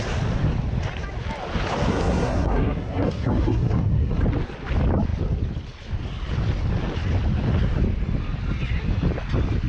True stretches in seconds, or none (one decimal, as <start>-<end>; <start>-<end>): 0.0-1.9; 4.2-9.7